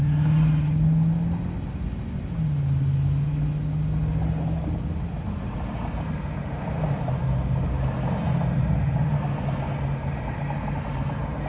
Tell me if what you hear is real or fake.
real